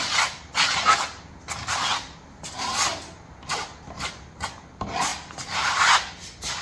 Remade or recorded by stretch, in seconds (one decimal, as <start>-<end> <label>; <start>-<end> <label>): 0.0-6.6 recorded